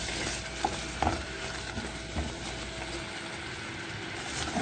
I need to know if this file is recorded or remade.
recorded